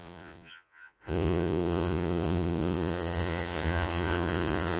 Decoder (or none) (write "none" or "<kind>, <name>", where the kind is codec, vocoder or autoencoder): vocoder, Vocos